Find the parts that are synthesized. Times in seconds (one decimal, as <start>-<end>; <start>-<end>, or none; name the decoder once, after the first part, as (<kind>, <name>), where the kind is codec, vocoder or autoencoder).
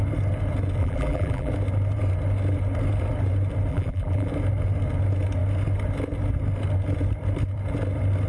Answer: 0.8-1.5 (vocoder, BigVGAN v2); 3.7-4.3